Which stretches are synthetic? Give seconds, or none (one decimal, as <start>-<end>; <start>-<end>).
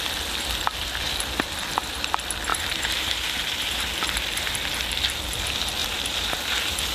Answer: 2.5-4.0; 5.8-6.9